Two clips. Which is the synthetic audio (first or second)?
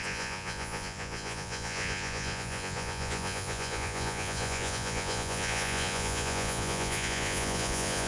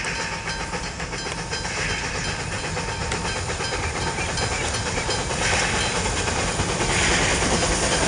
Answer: first